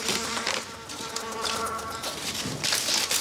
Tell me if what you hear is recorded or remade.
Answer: recorded